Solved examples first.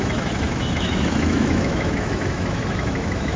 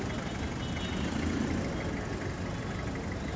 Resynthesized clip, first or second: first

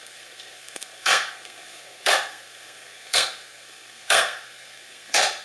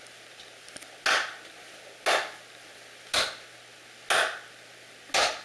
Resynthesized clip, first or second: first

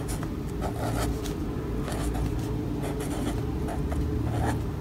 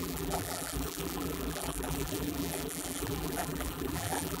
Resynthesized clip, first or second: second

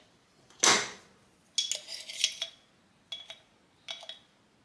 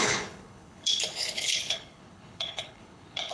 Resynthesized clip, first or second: second